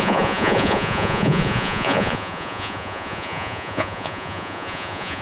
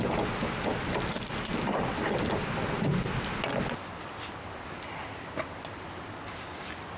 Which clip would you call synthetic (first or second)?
first